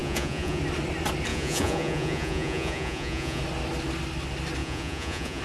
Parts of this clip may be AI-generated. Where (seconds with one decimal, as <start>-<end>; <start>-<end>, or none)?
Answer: 0.0-0.6; 1.3-3.4; 4.6-5.4